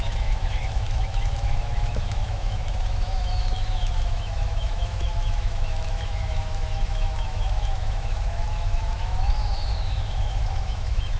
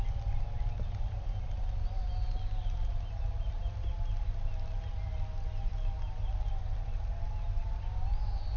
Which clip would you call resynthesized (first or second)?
first